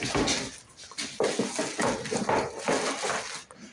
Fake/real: real